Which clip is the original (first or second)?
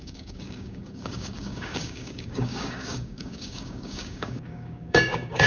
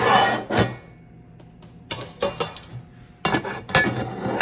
second